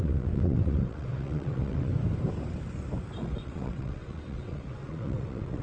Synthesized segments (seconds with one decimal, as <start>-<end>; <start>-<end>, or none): 0.0-1.9; 3.2-5.6